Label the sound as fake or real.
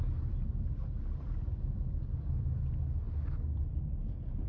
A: real